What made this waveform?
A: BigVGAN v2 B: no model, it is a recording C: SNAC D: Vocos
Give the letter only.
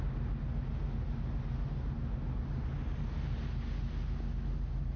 B